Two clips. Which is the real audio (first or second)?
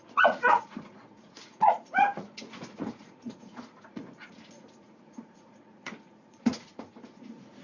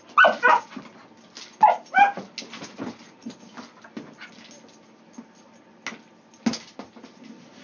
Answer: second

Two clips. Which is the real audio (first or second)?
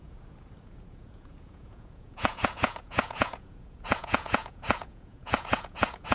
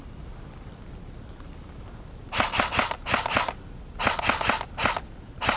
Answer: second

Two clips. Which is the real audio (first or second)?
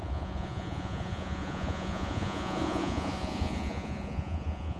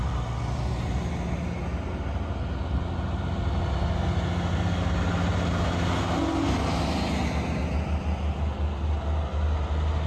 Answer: second